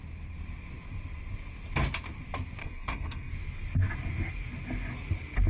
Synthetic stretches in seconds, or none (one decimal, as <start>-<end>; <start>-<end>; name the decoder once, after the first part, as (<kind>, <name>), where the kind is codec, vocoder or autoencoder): 2.6-3.3 (codec, SNAC)